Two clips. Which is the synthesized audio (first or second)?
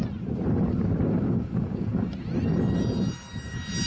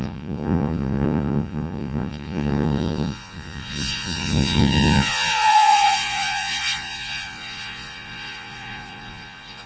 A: second